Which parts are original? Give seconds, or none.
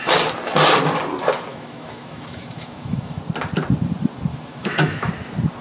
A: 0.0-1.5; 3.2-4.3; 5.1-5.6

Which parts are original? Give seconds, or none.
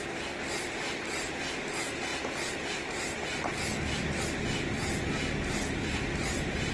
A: 0.0-6.7